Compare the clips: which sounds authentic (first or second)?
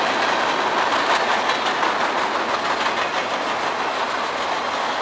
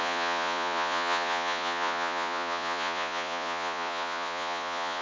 first